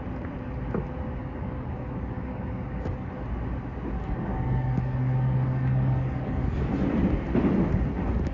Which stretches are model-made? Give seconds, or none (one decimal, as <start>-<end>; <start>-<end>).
1.2-3.1; 4.0-6.7